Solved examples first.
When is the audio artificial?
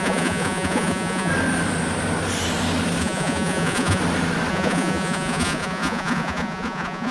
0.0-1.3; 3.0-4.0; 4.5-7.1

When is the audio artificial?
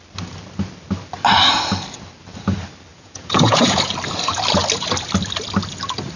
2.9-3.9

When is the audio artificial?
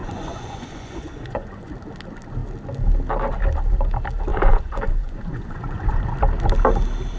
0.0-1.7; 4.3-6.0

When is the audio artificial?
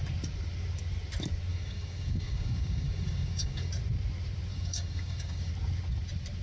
1.5-3.7; 4.5-5.5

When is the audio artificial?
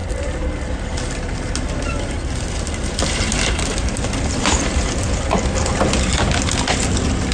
none